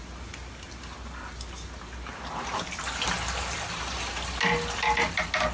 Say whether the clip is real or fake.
real